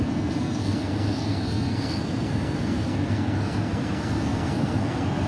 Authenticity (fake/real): fake